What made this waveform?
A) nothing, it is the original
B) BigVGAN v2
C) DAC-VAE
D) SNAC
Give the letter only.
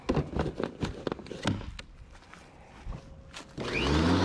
A